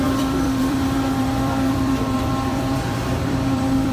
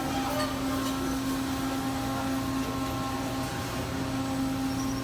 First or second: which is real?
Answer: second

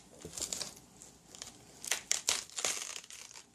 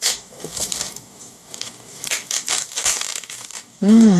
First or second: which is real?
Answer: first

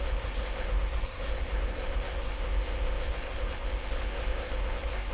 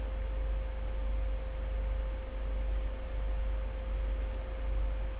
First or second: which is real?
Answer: second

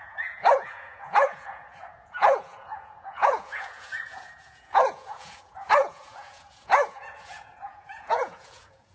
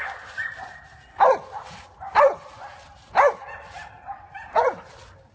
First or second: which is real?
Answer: second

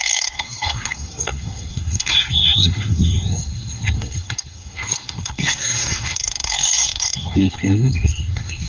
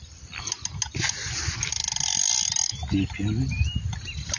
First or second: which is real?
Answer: second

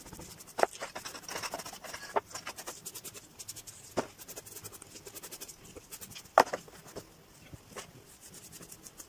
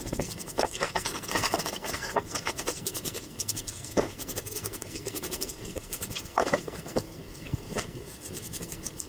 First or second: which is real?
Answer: first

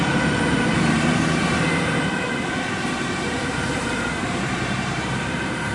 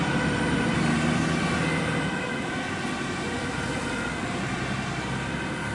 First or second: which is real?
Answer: second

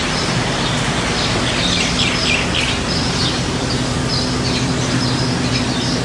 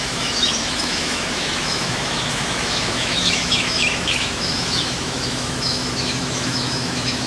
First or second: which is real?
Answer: first